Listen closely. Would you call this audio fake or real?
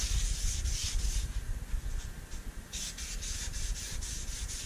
real